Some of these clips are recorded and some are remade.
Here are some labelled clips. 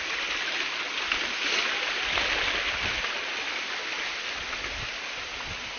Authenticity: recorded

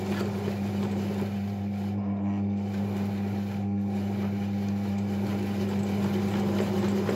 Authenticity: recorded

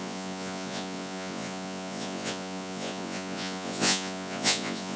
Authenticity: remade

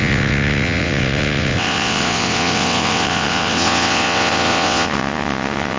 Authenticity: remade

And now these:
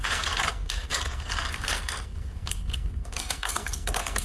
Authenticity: remade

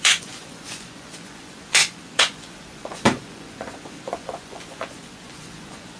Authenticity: remade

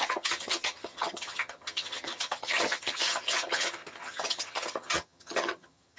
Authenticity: remade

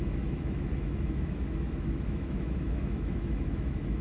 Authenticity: remade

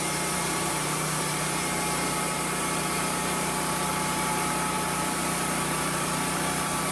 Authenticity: remade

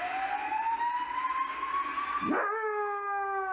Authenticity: recorded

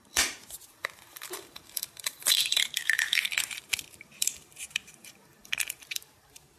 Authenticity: remade